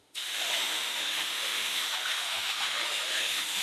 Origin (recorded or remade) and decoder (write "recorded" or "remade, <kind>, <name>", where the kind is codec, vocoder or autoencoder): remade, autoencoder, DAC-VAE